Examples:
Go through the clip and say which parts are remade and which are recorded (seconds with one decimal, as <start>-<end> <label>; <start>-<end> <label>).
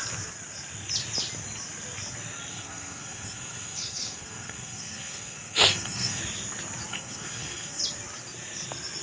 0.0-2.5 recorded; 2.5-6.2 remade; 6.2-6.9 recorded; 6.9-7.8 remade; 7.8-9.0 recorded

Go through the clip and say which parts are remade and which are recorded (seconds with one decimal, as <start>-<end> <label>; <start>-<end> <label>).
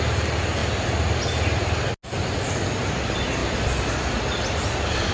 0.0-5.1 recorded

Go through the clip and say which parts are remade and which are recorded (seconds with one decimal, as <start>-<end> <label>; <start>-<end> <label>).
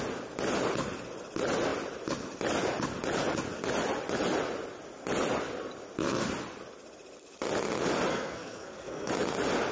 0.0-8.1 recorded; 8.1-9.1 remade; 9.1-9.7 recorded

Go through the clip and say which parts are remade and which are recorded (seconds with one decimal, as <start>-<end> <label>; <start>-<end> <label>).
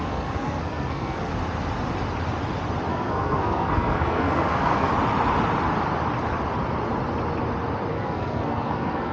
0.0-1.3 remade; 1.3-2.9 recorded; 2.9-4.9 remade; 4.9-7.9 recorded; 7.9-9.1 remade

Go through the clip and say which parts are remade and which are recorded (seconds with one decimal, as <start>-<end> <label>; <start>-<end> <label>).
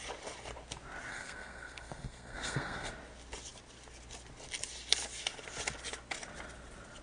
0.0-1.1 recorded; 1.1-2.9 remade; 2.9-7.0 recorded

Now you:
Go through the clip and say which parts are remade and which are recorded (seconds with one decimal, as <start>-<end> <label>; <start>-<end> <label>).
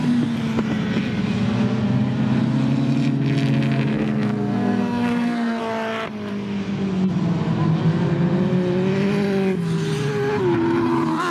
0.0-3.9 recorded; 3.9-5.6 remade; 5.6-11.3 recorded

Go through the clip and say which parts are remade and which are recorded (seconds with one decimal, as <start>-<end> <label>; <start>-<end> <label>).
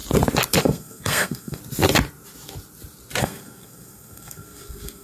0.0-0.6 recorded; 0.6-1.6 remade; 1.6-3.2 recorded; 3.2-5.0 remade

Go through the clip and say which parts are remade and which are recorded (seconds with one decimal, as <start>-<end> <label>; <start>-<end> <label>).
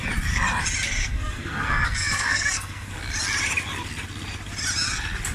0.0-1.0 recorded; 1.0-2.9 remade; 2.9-5.3 recorded